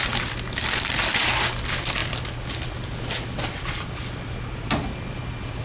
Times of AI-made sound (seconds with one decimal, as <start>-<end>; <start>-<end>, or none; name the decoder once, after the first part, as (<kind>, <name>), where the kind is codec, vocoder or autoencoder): none